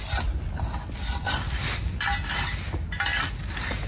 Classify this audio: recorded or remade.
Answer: recorded